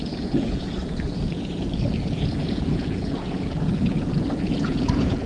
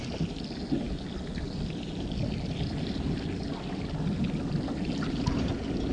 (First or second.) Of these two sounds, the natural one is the second